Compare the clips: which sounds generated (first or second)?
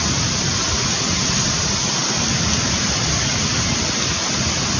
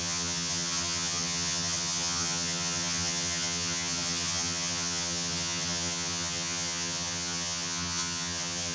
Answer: second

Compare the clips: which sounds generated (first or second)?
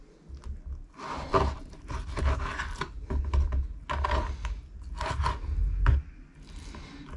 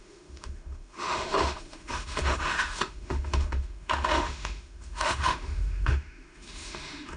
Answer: second